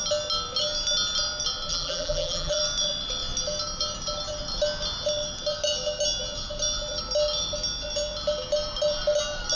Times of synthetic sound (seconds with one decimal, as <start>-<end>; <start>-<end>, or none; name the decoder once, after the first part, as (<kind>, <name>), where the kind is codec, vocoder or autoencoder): 1.7-2.6 (vocoder, BigVGAN v2)